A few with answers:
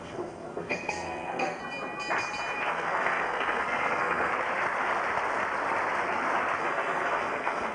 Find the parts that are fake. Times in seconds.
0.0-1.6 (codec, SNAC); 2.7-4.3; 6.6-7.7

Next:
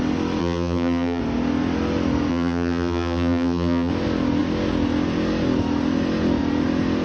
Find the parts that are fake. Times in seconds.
0.4-1.2 (vocoder, BigVGAN v2); 2.3-3.9

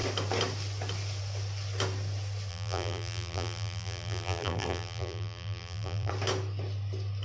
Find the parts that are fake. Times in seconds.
2.5-6.1 (vocoder, BigVGAN v2)

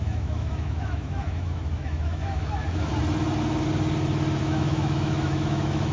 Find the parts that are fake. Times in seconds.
0.0-2.9 (autoencoder, DAC-VAE); 4.4-5.9

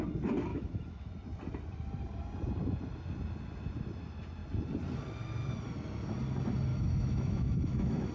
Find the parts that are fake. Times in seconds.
0.5-1.1 (autoencoder, DAC-VAE); 6.7-8.1

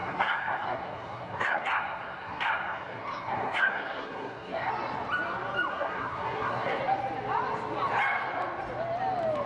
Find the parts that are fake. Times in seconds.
0.0-4.7 (codec, SNAC); 5.7-6.8